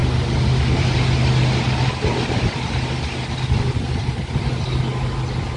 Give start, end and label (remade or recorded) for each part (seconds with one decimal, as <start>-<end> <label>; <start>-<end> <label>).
0.0-5.6 recorded